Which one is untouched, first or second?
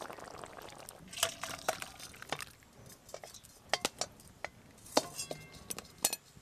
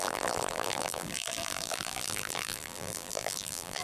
first